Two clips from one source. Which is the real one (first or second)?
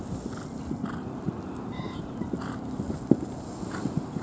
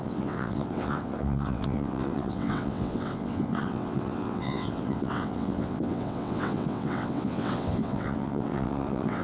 first